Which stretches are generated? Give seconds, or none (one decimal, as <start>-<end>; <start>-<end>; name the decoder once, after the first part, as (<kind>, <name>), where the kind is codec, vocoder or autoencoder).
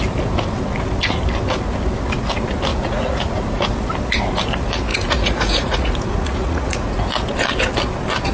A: 2.7-3.7 (vocoder, Vocos); 4.9-7.1